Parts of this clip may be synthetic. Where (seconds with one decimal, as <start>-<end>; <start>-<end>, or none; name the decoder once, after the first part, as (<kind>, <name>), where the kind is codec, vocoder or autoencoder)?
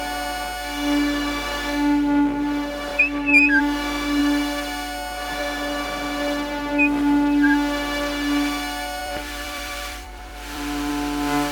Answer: 9.0-10.9 (vocoder, BigVGAN v2)